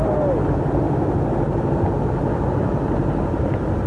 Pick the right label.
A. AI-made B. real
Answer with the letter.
B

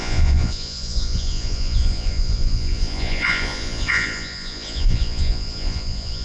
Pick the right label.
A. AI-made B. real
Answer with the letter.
A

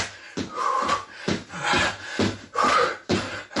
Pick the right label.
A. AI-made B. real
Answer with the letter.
B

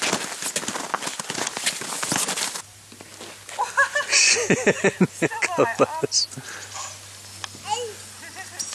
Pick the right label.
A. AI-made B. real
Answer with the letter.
B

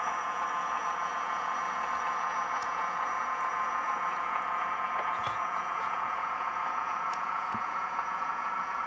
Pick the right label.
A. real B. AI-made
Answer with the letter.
B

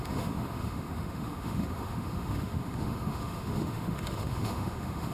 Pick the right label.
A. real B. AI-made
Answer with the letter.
B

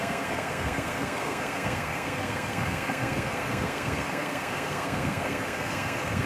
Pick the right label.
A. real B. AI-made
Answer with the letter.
B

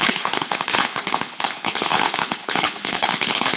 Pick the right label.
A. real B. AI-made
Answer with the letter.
B